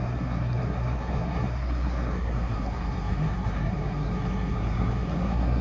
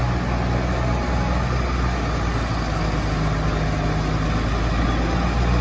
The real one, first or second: second